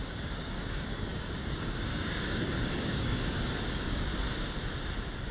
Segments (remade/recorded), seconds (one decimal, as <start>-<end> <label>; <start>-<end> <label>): 0.0-4.1 remade; 4.1-5.3 recorded

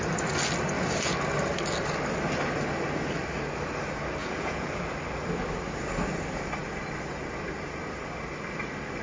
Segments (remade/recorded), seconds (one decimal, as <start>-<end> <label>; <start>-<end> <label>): 0.0-4.2 recorded; 4.2-4.8 remade; 4.8-9.0 recorded

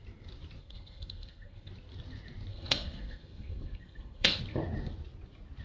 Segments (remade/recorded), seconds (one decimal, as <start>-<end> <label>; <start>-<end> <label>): 0.0-0.6 recorded; 0.6-1.7 remade; 1.7-2.5 recorded; 2.5-4.4 remade; 4.4-5.6 recorded

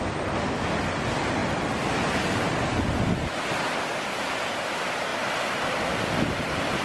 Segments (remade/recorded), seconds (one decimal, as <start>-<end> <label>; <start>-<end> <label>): 0.0-6.8 recorded

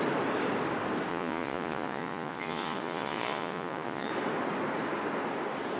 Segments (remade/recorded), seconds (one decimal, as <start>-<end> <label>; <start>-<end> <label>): 0.0-1.1 recorded; 1.1-4.1 remade; 4.1-5.8 recorded

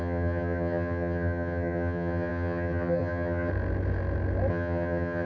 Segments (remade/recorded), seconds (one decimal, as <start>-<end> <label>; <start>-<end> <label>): 0.0-3.5 remade; 3.5-4.5 recorded; 4.5-5.3 remade